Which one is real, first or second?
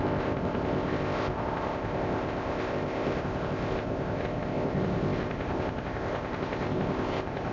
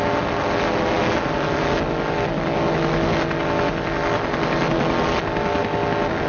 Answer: second